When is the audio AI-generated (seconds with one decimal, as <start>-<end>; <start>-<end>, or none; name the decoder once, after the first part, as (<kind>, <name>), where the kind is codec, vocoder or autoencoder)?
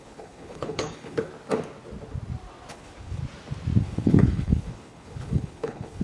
0.0-1.3 (codec, HILCodec); 2.7-3.2; 3.8-6.0